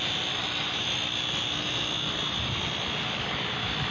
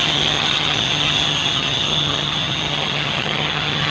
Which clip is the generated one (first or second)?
second